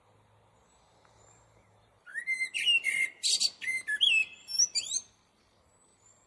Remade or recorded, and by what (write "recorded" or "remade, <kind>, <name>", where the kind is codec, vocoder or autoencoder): recorded